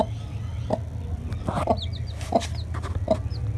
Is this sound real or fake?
real